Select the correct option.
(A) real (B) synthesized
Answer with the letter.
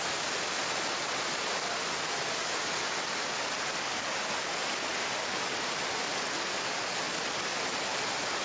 A